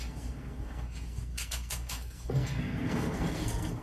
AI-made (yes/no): yes